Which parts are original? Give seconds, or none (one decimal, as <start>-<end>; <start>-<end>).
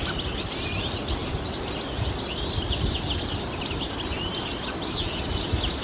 0.0-5.8